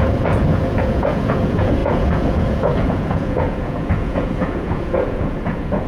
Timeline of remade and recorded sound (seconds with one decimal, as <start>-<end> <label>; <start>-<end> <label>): 0.0-5.9 remade